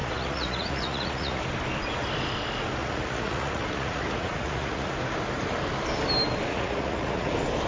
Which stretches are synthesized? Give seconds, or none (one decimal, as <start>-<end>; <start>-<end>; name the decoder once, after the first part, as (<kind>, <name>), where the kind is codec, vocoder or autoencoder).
0.0-1.4 (vocoder, Vocos); 2.8-4.9; 6.5-7.3